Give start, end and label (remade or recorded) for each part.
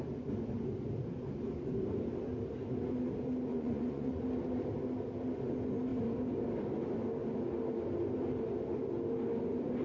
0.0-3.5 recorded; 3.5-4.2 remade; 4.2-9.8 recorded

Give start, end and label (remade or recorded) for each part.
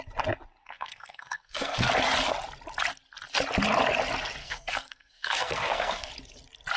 0.0-0.6 recorded; 0.6-1.9 remade; 1.9-4.4 recorded; 4.4-6.1 remade; 6.1-6.8 recorded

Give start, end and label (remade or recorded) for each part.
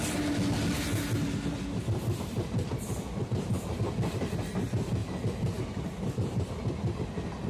0.0-7.5 recorded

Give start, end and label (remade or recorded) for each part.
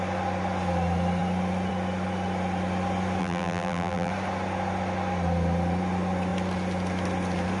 0.0-3.2 recorded; 3.2-4.1 remade; 4.1-7.6 recorded